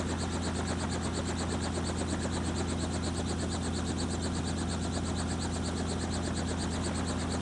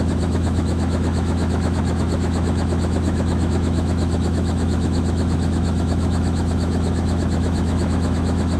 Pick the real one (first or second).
first